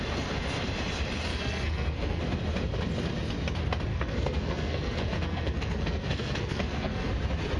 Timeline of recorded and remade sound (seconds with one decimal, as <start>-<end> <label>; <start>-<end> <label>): 0.0-1.3 recorded; 1.3-2.2 remade; 2.2-3.9 recorded; 3.9-7.1 remade; 7.1-7.6 recorded